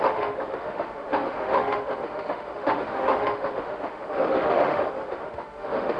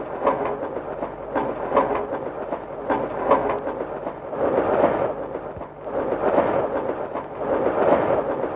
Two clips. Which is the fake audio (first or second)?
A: first